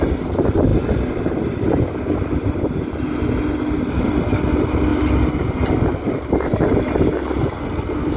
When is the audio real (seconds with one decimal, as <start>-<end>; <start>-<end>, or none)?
0.0-8.2